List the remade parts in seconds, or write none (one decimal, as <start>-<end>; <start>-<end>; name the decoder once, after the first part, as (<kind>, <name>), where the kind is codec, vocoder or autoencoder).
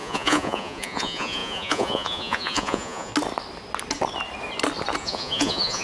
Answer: 0.0-3.1 (vocoder, Vocos); 5.0-5.8